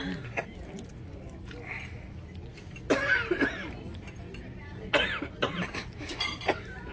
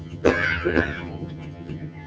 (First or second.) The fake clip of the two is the second